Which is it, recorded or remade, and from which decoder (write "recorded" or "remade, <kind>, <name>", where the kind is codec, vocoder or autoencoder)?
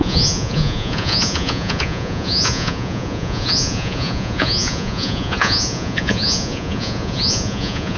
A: remade, vocoder, Vocos